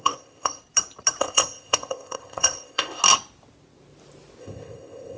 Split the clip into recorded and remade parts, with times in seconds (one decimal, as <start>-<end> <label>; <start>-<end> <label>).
0.0-0.6 remade; 0.6-1.2 recorded; 1.2-3.0 remade; 3.0-4.4 recorded; 4.4-5.2 remade